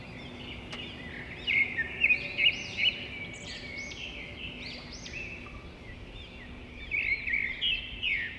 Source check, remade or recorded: recorded